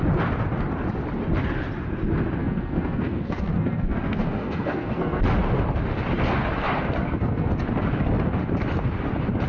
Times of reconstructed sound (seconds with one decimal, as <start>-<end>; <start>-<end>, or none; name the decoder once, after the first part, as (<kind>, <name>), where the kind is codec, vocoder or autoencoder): 2.4-5.2 (codec, SNAC); 7.0-7.5